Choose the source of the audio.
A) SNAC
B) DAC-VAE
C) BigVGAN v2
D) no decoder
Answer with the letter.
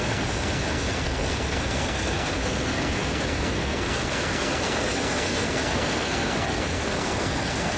A